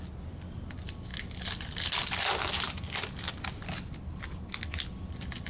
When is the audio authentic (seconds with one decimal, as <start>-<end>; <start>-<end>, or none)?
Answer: 0.0-5.5